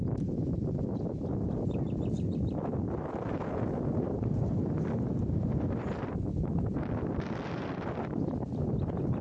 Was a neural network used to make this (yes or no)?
no